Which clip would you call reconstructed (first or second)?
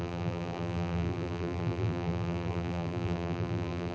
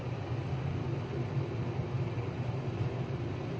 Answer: first